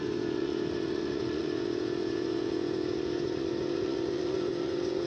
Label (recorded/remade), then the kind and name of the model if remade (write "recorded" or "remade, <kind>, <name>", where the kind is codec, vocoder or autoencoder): remade, vocoder, Vocos